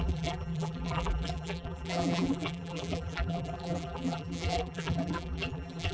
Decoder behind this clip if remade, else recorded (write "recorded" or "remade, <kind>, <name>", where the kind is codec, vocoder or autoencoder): remade, vocoder, BigVGAN v2